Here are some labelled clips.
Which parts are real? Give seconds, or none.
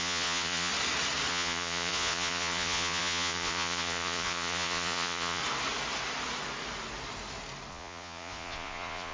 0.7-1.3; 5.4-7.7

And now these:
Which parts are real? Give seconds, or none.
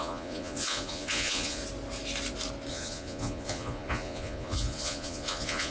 1.6-2.7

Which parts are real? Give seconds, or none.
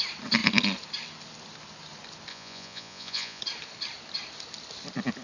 0.0-2.3; 3.4-5.2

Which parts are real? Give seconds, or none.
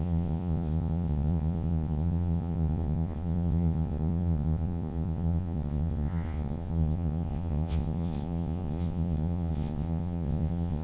none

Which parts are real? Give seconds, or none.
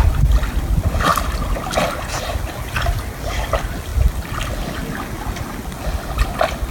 0.0-6.7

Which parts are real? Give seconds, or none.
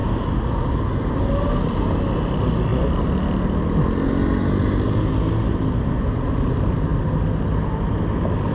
0.0-8.5